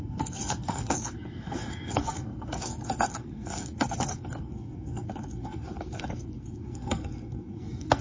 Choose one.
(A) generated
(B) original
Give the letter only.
A